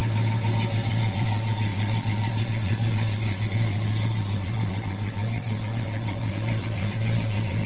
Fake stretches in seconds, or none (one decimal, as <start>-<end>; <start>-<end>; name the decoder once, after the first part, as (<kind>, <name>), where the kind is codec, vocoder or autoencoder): 0.9-7.7 (vocoder, Vocos)